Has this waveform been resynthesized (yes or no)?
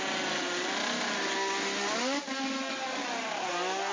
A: no